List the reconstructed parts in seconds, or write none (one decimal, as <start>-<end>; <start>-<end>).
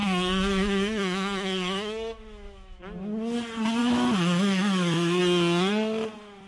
0.0-2.8; 3.8-5.2